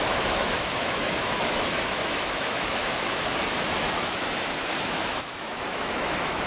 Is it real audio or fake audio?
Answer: fake